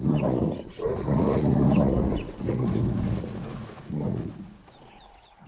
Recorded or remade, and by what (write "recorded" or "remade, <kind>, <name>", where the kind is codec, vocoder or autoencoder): remade, vocoder, Vocos